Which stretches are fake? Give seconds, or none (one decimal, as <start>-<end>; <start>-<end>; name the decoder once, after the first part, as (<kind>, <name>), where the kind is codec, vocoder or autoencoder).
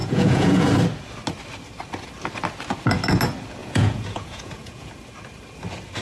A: 0.0-0.7 (vocoder, Vocos); 3.6-4.9